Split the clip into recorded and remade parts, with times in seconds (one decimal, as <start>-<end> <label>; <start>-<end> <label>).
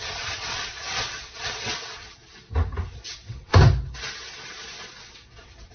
0.0-2.2 remade; 2.2-3.1 recorded; 3.1-3.5 remade; 3.5-5.0 recorded; 5.0-5.7 remade